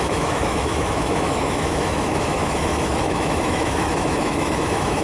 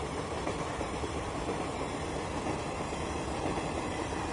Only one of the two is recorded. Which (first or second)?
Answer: second